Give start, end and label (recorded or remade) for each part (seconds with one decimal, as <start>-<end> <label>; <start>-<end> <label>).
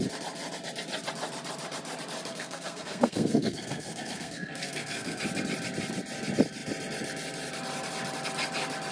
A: 0.0-2.3 recorded; 2.3-5.2 remade; 5.2-8.9 recorded